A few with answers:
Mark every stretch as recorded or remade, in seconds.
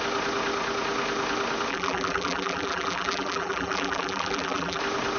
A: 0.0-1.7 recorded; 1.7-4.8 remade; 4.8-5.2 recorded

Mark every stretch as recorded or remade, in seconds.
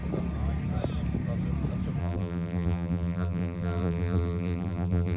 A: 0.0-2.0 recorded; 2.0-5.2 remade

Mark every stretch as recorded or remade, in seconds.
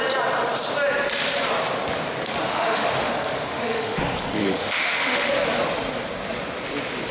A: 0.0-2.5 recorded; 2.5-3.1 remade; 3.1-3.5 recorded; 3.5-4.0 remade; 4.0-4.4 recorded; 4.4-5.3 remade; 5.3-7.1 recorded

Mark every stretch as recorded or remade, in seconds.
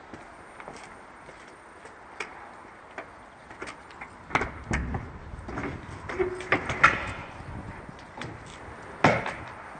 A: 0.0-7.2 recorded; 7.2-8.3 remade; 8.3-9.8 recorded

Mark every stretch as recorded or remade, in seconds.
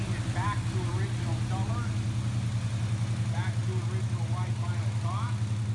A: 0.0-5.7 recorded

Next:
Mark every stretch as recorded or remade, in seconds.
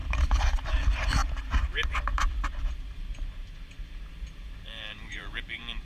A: 0.0-5.8 remade